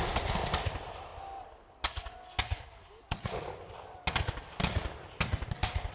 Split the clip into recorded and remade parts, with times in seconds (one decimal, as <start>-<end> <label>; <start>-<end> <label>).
0.0-5.9 recorded